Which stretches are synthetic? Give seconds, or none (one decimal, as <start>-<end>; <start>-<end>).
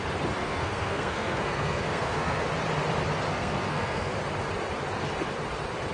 0.4-2.4; 3.3-4.1